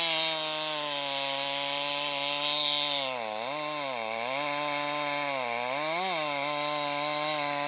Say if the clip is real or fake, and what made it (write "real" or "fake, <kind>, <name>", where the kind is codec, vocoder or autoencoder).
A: real